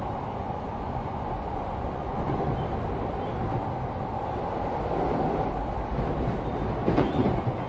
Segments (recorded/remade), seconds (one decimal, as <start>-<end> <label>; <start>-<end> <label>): 0.0-0.4 recorded; 0.4-2.5 remade; 2.5-6.8 recorded; 6.8-7.7 remade

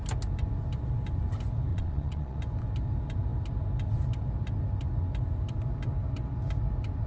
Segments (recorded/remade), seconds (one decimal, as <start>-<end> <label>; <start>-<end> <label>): 0.0-1.7 recorded; 1.7-2.4 remade; 2.4-7.1 recorded

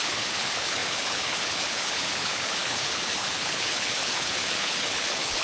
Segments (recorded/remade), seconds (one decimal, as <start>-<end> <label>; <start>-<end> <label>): 0.0-5.4 remade

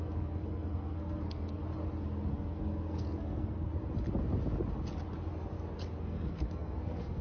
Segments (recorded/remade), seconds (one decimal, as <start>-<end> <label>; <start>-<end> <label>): 0.0-1.6 remade; 1.6-2.3 recorded; 2.3-3.7 remade; 3.7-6.0 recorded; 6.0-7.2 remade

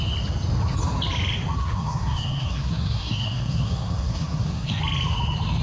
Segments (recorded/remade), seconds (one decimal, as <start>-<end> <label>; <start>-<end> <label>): 0.0-1.6 recorded; 1.6-4.8 remade; 4.8-5.6 recorded

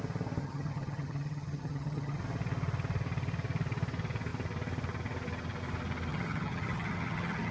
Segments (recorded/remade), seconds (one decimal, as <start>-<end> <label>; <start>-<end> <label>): 0.0-0.4 recorded; 0.4-2.2 remade; 2.2-6.1 recorded; 6.1-7.5 remade